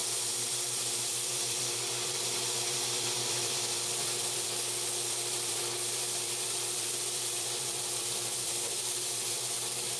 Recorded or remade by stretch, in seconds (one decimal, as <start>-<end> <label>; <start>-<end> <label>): 0.0-10.0 remade